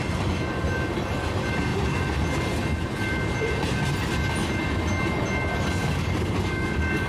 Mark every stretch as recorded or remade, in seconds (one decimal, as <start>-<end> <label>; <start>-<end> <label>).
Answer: 0.0-5.8 recorded; 5.8-7.1 remade